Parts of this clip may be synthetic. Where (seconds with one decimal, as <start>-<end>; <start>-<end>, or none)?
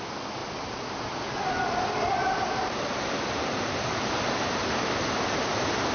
2.2-5.9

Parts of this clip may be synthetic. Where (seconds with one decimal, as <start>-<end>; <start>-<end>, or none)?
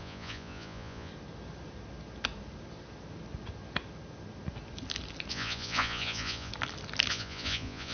0.0-1.1; 5.3-6.5; 7.1-7.9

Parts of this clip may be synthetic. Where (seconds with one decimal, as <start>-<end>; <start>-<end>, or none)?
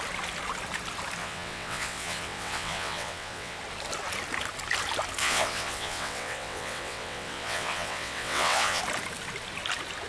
1.2-3.6; 5.2-8.8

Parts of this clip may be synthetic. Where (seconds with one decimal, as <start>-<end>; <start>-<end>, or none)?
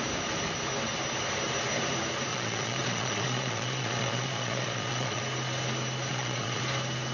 2.3-5.2; 6.1-6.6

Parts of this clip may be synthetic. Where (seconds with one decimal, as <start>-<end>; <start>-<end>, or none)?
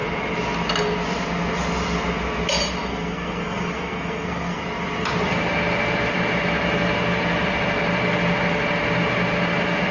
2.9-4.6